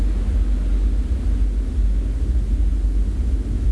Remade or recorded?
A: recorded